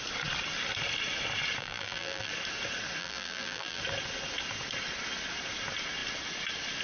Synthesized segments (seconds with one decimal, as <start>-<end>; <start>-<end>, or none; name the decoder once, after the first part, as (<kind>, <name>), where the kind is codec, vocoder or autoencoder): 1.6-2.3 (vocoder, BigVGAN v2); 3.0-3.8